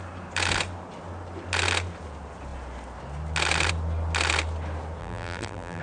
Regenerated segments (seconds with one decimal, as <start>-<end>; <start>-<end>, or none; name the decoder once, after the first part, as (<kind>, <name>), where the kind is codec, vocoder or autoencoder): 5.0-5.8 (vocoder, BigVGAN v2)